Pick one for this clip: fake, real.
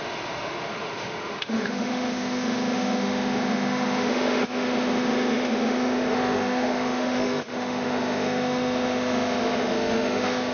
fake